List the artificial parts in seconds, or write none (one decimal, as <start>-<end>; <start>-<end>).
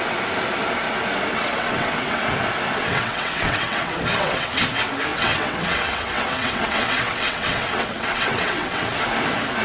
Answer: 1.3-2.2; 2.7-4.6; 5.1-9.0